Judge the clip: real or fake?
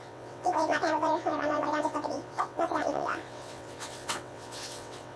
fake